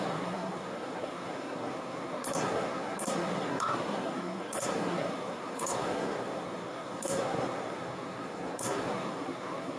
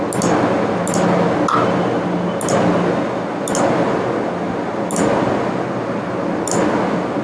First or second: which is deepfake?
first